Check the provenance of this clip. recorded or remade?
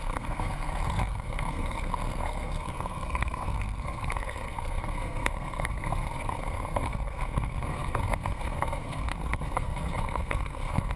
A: remade